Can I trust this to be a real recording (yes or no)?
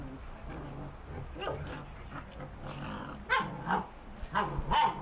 yes